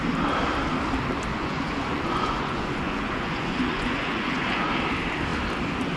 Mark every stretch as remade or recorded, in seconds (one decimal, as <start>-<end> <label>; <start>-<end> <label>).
0.0-1.3 recorded; 1.3-4.7 remade; 4.7-6.0 recorded